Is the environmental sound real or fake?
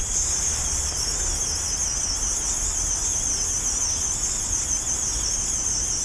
real